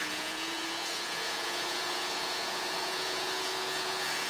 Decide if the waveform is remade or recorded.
remade